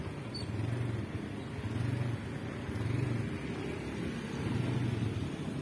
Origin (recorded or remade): recorded